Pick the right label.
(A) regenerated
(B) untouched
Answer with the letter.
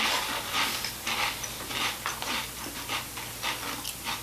B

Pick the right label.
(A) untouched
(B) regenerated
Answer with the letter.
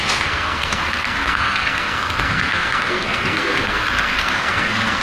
B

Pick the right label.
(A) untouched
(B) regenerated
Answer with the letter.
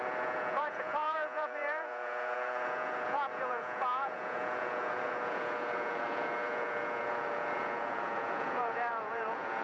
B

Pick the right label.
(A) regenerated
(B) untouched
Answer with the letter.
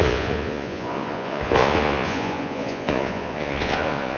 A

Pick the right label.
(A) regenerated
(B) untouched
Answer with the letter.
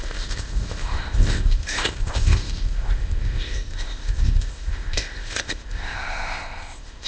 A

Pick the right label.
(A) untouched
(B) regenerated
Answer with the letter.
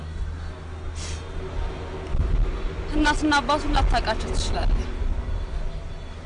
A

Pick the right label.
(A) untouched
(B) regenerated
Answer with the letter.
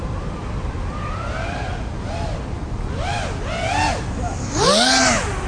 A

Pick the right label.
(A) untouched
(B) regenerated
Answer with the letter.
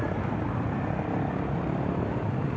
A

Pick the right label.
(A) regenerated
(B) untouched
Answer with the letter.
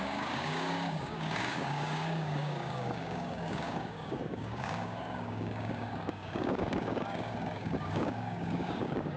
A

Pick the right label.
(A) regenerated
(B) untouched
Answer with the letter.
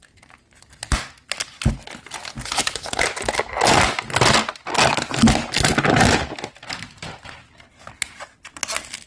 B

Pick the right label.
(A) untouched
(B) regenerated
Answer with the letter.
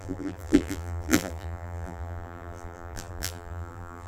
B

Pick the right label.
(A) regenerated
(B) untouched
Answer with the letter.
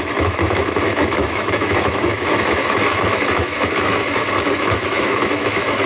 A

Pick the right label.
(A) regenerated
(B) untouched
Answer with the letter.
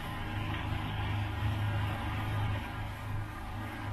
A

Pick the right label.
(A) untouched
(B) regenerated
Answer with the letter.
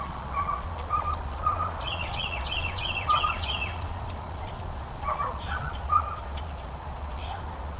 B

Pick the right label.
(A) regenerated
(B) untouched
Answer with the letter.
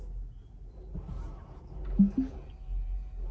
B